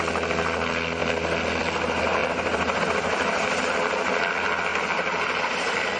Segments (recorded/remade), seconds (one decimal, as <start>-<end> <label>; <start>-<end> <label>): 0.0-2.2 recorded; 2.2-2.8 remade; 2.8-4.7 recorded; 4.7-6.0 remade